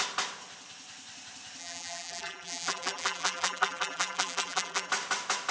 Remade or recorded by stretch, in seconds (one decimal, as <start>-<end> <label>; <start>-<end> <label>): 0.0-1.6 recorded; 1.6-4.9 remade; 4.9-5.5 recorded